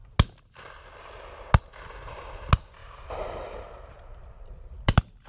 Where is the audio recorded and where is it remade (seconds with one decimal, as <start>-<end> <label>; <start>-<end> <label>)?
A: 0.0-2.8 recorded; 2.8-4.2 remade; 4.2-5.3 recorded